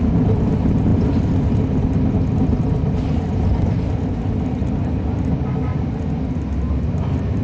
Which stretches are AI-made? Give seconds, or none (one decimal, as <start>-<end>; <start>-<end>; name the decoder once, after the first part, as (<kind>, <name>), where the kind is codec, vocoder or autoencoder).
0.9-4.9 (vocoder, BigVGAN v2); 5.7-6.3